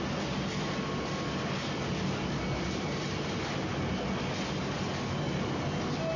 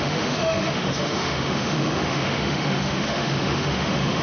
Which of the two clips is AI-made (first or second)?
second